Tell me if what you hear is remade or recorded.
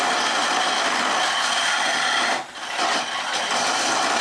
recorded